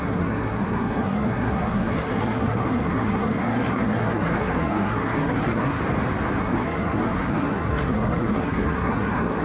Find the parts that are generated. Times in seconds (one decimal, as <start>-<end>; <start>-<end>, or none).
0.0-5.8; 6.4-9.4